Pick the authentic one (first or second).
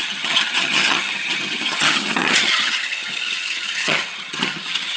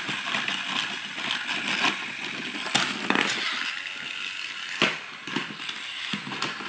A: second